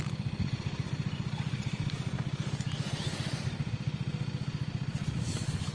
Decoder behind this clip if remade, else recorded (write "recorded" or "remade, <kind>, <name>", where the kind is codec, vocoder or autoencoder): recorded